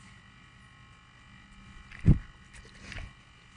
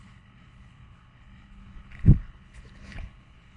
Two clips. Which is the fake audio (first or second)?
second